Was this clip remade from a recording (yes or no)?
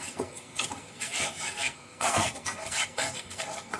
yes